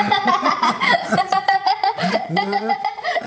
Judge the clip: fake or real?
fake